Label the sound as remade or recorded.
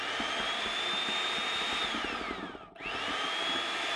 recorded